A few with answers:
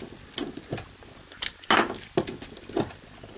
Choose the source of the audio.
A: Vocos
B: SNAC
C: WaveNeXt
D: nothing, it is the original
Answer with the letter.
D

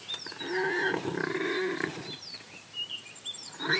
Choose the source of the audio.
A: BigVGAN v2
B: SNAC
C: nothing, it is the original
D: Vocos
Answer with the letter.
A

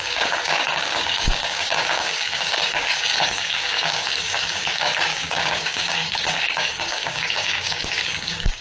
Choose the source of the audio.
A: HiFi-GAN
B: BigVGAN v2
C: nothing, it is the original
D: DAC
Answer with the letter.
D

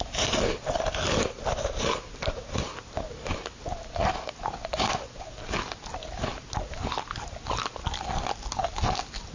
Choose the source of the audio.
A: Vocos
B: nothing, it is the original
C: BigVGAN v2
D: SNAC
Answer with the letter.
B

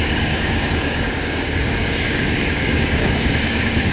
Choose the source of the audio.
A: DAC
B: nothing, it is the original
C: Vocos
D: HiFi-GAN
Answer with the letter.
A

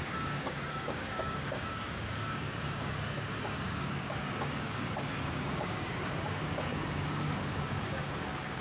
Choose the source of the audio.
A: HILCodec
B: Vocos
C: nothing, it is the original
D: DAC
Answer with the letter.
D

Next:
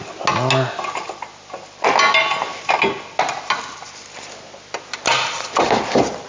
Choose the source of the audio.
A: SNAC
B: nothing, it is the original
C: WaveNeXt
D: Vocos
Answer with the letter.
B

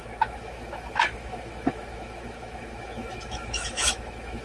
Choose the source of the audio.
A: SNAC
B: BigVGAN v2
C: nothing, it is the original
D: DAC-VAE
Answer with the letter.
D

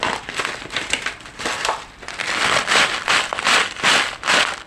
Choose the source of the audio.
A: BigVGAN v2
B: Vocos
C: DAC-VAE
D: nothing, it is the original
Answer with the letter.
D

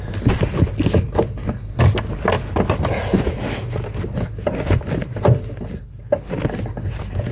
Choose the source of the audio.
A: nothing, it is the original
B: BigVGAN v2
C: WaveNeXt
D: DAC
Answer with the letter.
A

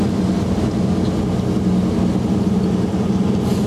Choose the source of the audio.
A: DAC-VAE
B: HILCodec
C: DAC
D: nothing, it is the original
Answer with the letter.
D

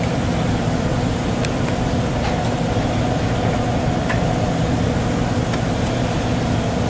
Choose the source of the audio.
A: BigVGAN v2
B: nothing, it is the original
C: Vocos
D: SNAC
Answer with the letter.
B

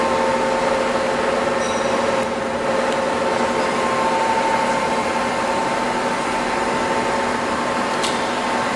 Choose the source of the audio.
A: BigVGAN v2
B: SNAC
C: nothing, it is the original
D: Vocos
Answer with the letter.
C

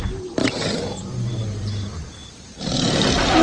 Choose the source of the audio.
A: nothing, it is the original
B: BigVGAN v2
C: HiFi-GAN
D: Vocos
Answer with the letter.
B